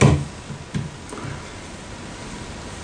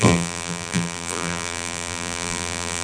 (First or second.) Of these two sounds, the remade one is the second